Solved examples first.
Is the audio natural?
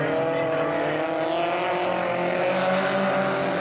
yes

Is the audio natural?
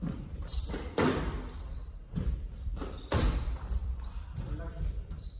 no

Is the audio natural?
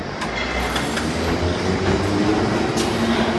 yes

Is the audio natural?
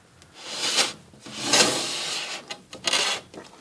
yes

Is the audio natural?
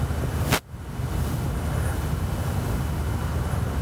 yes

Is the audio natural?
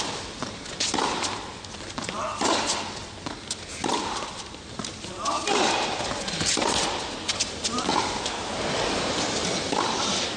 yes